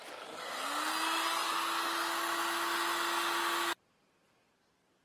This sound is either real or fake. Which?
real